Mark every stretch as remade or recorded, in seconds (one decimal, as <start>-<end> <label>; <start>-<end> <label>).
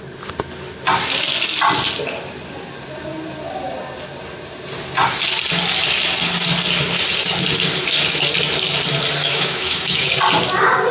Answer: 0.0-9.2 recorded; 9.2-10.1 remade; 10.1-10.9 recorded